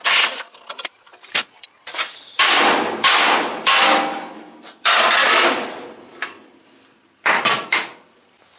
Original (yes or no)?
yes